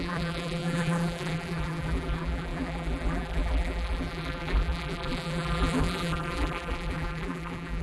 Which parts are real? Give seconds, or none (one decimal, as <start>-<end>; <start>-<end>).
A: none